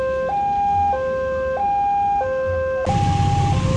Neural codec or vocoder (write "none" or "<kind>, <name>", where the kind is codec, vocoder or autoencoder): none